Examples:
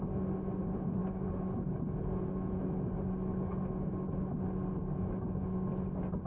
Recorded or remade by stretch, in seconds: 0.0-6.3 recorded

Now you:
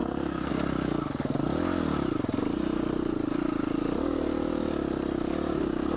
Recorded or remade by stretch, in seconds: 0.0-0.5 remade; 0.5-6.0 recorded

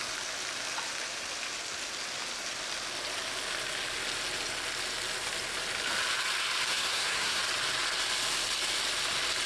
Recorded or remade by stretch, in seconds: 0.0-6.7 recorded; 6.7-7.4 remade; 7.4-9.5 recorded

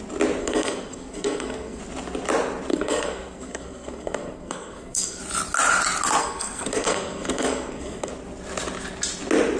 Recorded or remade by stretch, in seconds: 0.0-0.4 recorded; 0.4-1.8 remade; 1.8-2.7 recorded; 2.7-5.2 remade; 5.2-6.2 recorded; 6.2-8.1 remade; 8.1-9.6 recorded

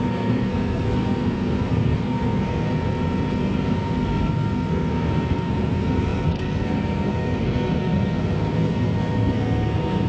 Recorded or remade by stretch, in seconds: 0.0-2.7 remade; 2.7-3.4 recorded; 3.4-10.1 remade